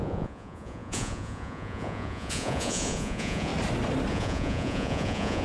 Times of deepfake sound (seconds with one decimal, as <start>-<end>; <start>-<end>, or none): 0.0-3.5; 4.1-5.4